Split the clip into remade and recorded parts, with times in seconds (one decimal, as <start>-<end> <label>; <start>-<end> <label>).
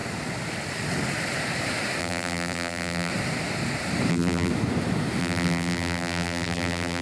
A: 0.0-2.0 recorded; 2.0-3.1 remade; 3.1-4.1 recorded; 4.1-4.5 remade; 4.5-5.2 recorded; 5.2-7.0 remade